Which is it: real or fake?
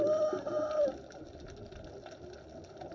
real